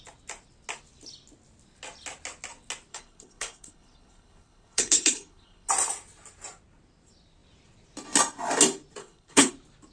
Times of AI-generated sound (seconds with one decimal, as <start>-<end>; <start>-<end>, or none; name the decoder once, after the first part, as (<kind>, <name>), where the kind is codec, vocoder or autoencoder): 2.9-5.7 (codec, HILCodec); 9.0-9.5